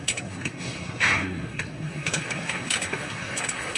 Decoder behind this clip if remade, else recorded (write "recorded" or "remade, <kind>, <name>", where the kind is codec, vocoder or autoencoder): remade, codec, SNAC